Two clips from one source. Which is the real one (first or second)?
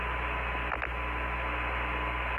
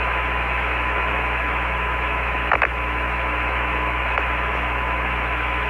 first